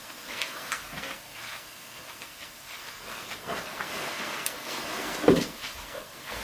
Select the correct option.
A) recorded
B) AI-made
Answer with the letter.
B